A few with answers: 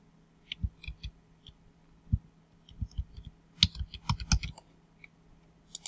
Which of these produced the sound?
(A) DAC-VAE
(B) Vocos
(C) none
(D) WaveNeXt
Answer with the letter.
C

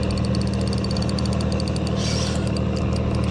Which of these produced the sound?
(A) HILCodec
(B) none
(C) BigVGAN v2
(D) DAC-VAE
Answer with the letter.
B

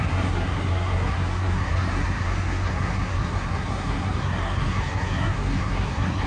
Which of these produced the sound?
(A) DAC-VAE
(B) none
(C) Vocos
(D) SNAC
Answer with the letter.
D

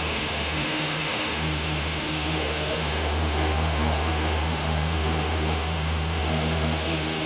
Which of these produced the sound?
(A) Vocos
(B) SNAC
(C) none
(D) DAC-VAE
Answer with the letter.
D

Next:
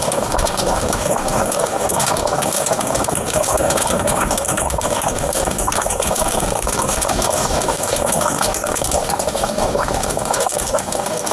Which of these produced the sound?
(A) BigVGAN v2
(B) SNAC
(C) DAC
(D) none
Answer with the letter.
C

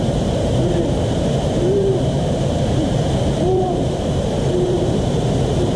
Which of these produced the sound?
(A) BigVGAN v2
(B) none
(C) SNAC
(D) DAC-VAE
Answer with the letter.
A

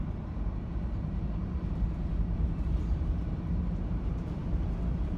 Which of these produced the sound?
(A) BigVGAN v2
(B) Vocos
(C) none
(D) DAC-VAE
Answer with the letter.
A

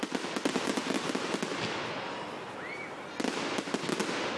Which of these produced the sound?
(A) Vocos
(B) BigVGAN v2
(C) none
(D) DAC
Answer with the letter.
C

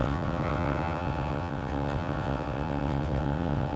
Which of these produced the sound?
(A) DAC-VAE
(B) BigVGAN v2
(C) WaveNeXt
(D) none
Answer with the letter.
C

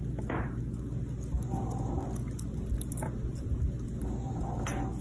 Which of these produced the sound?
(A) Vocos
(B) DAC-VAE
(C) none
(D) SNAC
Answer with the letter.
C